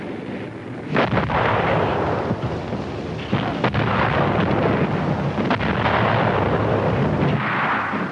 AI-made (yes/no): no